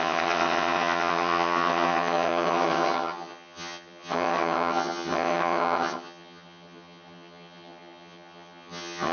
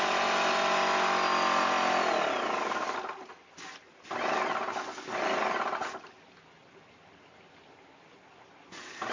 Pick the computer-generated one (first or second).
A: first